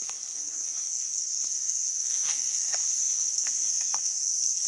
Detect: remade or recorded remade